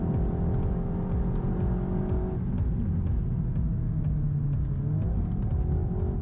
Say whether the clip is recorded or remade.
recorded